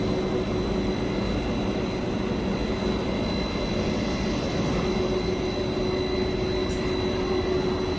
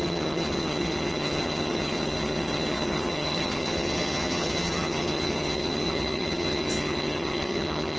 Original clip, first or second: first